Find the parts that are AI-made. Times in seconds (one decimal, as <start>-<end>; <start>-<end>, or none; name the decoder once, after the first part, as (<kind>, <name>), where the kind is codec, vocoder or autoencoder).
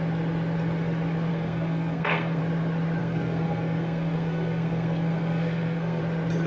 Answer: 1.3-2.4 (codec, SNAC); 3.0-6.0